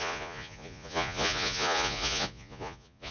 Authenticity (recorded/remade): remade